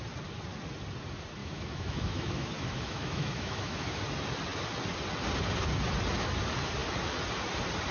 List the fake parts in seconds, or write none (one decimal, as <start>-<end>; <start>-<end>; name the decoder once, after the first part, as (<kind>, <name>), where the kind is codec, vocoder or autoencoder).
1.4-4.0 (autoencoder, DAC-VAE)